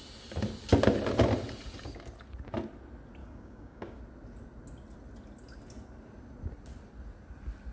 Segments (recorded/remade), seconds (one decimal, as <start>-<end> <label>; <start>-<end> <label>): 0.0-3.2 recorded; 3.2-4.0 remade; 4.0-7.7 recorded